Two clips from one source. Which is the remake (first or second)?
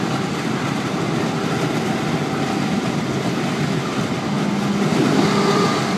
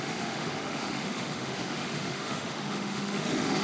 second